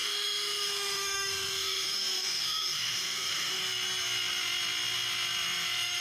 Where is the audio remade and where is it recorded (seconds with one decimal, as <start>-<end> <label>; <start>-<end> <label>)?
0.0-3.6 remade; 3.6-6.0 recorded